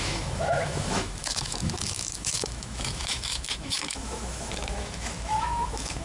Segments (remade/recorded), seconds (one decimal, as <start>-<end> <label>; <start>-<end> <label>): 0.0-6.0 remade

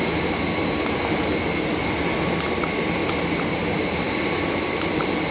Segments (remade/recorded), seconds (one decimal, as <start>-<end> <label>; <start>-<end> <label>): 0.0-5.3 recorded

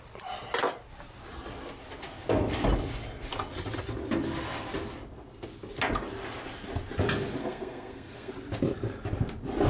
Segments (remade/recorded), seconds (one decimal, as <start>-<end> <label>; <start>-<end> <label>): 0.0-7.4 recorded; 7.4-8.3 remade; 8.3-9.7 recorded

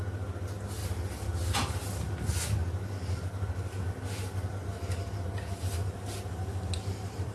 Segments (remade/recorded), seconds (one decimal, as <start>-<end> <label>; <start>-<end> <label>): 0.0-7.3 recorded

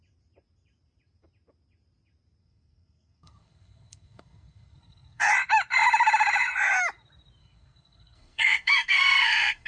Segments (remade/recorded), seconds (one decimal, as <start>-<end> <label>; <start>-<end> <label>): 0.0-2.4 recorded; 2.4-5.3 remade; 5.3-7.4 recorded; 7.4-9.7 remade